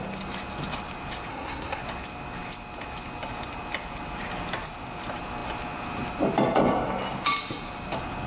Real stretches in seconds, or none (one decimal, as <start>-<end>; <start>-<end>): 0.0-1.3; 1.8-8.3